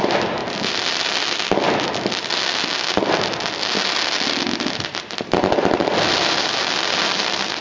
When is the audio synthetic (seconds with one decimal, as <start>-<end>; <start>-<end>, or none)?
none